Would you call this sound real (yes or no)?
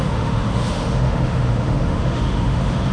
no